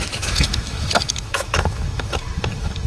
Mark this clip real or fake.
fake